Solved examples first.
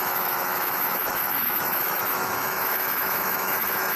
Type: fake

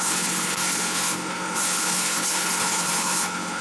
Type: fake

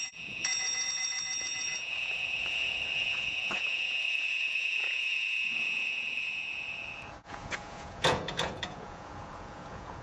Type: fake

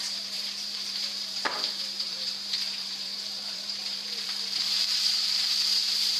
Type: fake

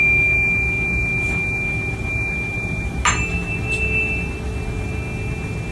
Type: real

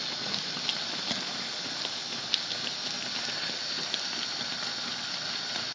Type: real